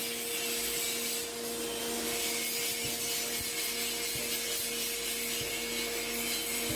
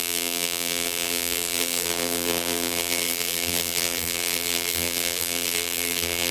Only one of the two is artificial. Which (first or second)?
second